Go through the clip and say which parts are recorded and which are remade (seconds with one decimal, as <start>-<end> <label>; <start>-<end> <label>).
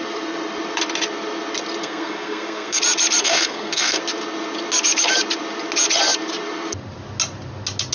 0.0-1.8 recorded; 1.8-2.8 remade; 2.8-3.2 recorded; 3.2-4.0 remade; 4.0-7.9 recorded